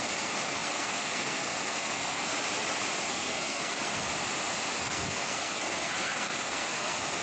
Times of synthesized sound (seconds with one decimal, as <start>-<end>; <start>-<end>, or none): 0.0-2.3; 3.1-4.1; 4.8-7.2